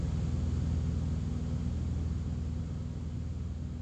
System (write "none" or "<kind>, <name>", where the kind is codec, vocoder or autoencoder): none